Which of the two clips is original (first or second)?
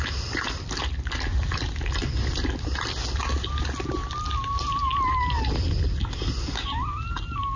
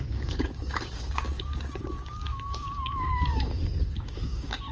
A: first